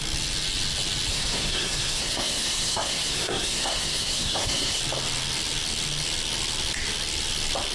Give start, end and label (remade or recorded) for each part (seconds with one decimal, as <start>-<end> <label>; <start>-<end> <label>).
0.0-1.1 recorded; 1.1-4.8 remade; 4.8-7.7 recorded